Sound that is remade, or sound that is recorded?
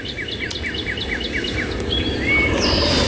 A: recorded